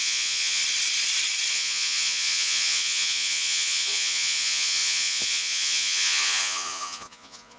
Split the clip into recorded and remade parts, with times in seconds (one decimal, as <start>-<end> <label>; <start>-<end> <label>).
0.0-0.6 remade; 0.6-1.5 recorded; 1.5-7.6 remade